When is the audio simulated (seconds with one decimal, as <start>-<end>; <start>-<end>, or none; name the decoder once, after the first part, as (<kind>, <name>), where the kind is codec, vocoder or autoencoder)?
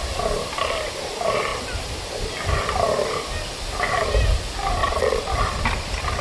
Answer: 4.8-5.3 (vocoder, Vocos)